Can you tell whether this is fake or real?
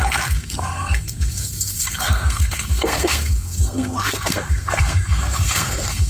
fake